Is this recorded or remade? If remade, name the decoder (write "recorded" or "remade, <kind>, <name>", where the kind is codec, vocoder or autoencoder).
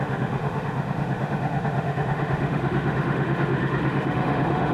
remade, autoencoder, DAC-VAE